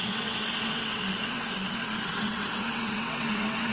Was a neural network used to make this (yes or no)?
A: yes